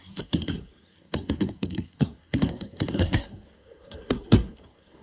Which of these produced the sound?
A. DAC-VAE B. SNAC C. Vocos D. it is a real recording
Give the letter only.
B